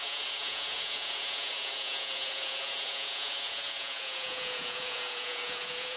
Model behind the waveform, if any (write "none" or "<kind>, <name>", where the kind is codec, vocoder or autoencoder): vocoder, Vocos